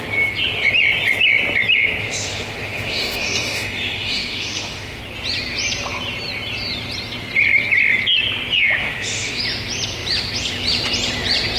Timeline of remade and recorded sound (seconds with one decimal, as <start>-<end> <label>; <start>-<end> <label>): 0.0-2.0 recorded; 2.0-5.0 remade; 5.0-8.8 recorded; 8.8-9.4 remade; 9.4-11.6 recorded